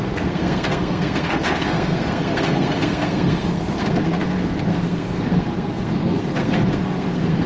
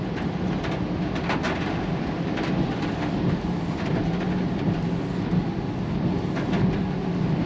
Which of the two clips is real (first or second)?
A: second